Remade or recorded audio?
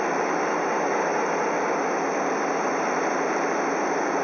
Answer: recorded